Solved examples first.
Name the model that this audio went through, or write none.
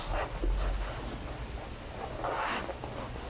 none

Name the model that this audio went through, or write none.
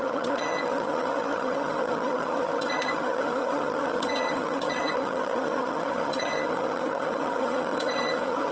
vocoder, HiFi-GAN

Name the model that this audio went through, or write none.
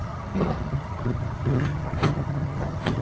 vocoder, HiFi-GAN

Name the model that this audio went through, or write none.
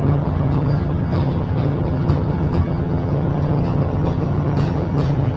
vocoder, HiFi-GAN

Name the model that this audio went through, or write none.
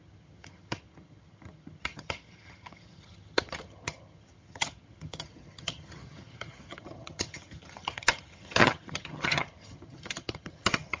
vocoder, HiFi-GAN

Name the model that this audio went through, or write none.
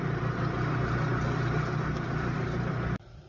none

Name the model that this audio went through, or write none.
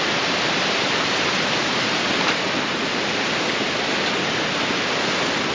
none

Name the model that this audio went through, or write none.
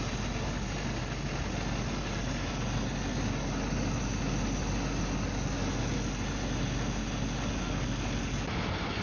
none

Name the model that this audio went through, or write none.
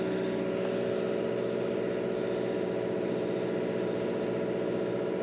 none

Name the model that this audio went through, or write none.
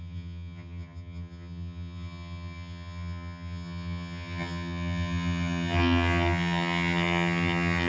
vocoder, HiFi-GAN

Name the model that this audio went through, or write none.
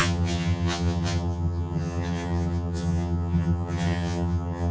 vocoder, HiFi-GAN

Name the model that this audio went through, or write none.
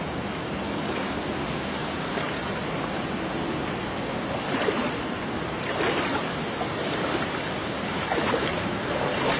none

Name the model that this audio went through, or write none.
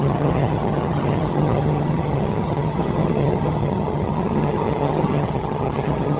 vocoder, HiFi-GAN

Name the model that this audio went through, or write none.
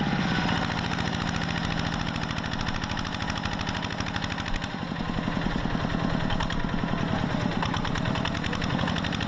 none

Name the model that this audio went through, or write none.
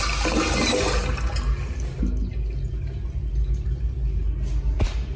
none